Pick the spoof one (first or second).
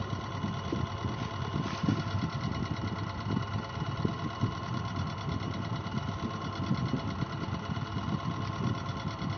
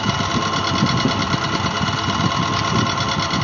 first